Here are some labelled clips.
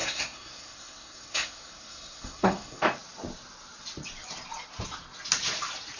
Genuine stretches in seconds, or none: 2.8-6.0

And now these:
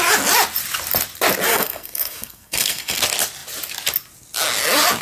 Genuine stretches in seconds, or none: 0.0-1.5; 3.0-5.0

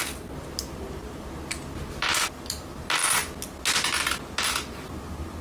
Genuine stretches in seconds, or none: 0.0-5.4

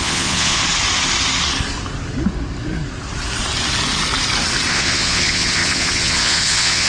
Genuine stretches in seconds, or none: 0.6-4.7